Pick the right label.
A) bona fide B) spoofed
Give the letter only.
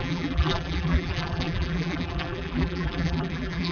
B